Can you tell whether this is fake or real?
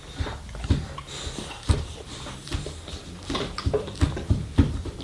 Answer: real